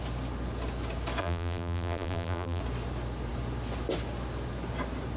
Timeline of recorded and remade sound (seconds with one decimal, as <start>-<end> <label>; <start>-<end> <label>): 0.0-1.2 recorded; 1.2-2.6 remade; 2.6-5.2 recorded